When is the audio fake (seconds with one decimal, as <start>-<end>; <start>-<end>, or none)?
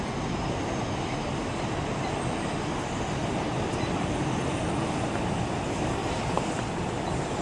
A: 3.5-4.4; 6.0-7.4